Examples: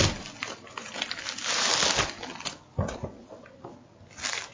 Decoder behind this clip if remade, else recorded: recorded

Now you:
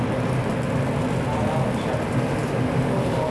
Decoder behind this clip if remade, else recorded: recorded